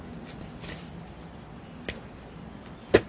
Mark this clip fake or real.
real